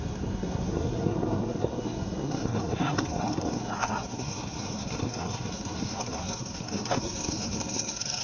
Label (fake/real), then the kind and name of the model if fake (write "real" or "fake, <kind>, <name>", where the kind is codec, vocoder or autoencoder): fake, codec, SNAC